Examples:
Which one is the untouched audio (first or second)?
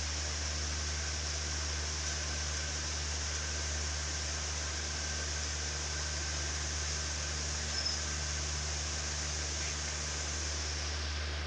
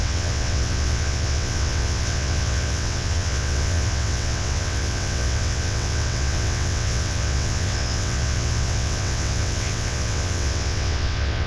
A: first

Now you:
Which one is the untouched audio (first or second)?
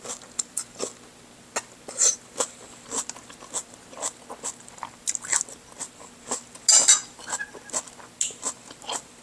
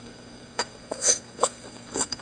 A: first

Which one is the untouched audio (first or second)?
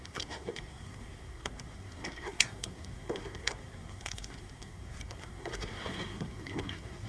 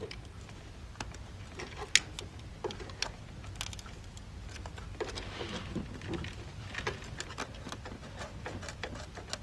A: second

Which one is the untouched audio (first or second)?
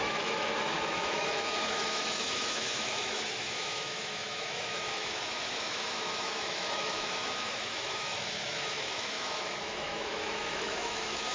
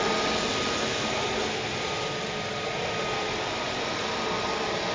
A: second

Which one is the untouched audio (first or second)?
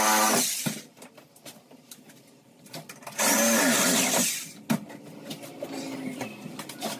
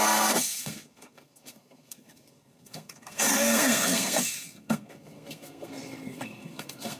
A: first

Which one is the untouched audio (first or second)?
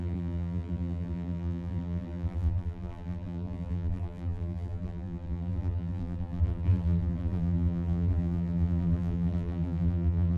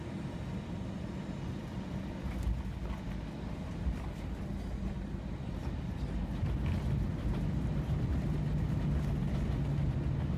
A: second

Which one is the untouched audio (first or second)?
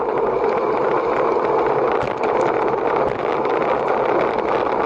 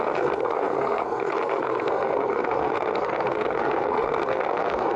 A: first